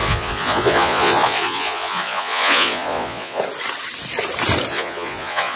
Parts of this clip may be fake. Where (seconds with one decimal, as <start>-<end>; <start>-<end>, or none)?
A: 0.0-3.4; 4.7-5.6

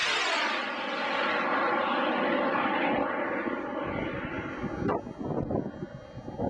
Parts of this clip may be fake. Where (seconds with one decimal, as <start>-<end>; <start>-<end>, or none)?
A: none

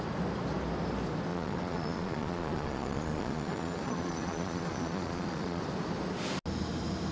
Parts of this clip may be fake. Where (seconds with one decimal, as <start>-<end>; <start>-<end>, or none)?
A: 1.3-5.6

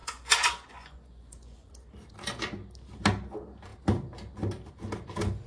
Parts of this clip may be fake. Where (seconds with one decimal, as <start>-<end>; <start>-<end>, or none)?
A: 0.0-1.7